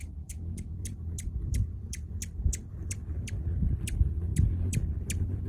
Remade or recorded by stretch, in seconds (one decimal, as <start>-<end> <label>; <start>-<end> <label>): 0.0-3.3 remade; 3.3-5.5 recorded

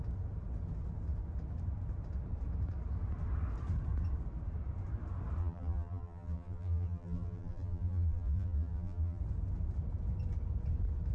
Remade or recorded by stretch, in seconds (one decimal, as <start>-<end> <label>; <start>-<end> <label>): 0.0-5.4 recorded; 5.4-9.2 remade; 9.2-11.1 recorded

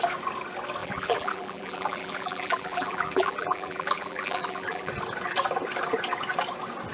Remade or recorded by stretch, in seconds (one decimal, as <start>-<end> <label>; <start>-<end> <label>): 0.0-0.8 recorded; 0.8-4.9 remade; 4.9-6.9 recorded

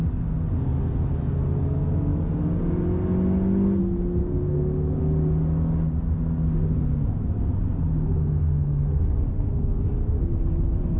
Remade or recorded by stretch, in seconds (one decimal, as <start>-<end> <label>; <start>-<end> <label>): 0.0-4.2 recorded; 4.2-5.0 remade; 5.0-8.2 recorded; 8.2-9.8 remade; 9.8-11.0 recorded

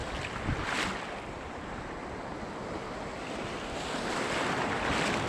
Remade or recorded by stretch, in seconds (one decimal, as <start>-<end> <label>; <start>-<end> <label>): 0.0-5.3 recorded

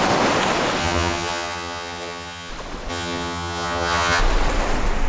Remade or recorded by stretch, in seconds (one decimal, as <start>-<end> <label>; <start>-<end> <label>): 0.0-0.8 recorded; 0.8-2.5 remade; 2.5-2.9 recorded; 2.9-4.2 remade; 4.2-5.1 recorded

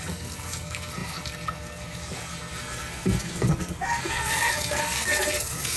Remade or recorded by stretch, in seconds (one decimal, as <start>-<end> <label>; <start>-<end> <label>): 0.0-5.8 remade